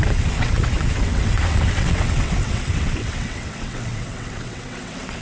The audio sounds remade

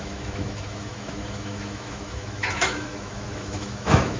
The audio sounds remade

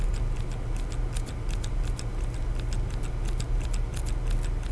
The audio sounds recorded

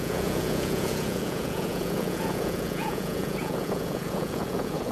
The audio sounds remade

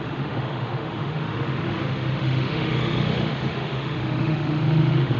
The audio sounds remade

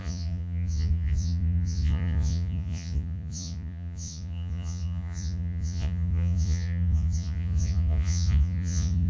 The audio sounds remade